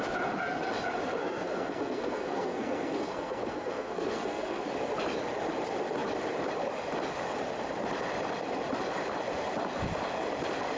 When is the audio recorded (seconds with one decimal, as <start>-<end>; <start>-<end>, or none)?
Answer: 0.0-1.2; 4.6-10.8